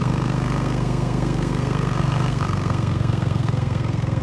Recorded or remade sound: remade